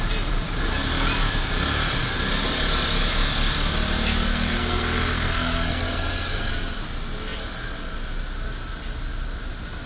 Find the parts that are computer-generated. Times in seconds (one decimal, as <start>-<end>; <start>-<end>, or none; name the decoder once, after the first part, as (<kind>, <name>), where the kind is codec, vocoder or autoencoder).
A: 4.3-6.5 (codec, SNAC)